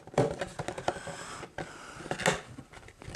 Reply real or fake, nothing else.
real